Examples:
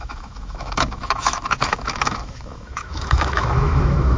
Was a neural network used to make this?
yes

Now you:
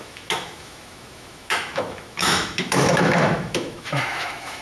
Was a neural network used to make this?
yes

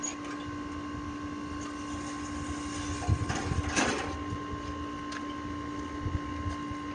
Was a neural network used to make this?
no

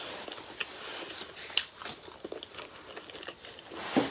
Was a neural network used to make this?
no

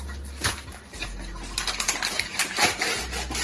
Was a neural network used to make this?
no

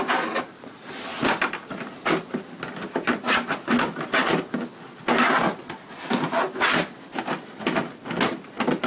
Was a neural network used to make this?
no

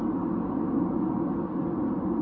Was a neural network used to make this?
no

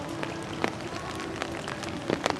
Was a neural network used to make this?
no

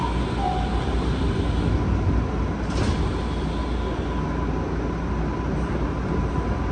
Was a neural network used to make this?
no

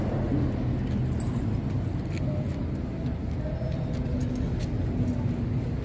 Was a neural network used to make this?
no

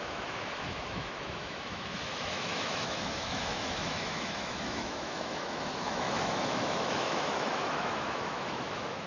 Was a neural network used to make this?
yes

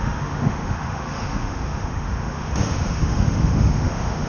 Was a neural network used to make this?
yes